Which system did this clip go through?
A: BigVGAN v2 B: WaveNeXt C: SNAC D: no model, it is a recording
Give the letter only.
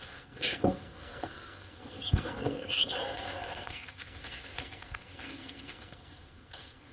C